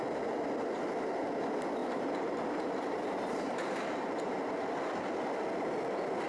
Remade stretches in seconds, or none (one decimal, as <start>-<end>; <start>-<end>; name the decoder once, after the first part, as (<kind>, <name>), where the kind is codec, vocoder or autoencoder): 1.8-4.4 (vocoder, BigVGAN v2)